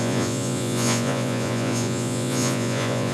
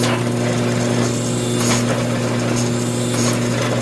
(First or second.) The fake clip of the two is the first